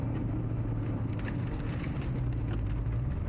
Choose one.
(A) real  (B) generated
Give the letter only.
A